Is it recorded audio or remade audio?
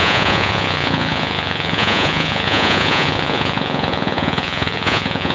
remade